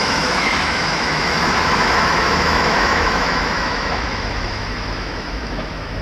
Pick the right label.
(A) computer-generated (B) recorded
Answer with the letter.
A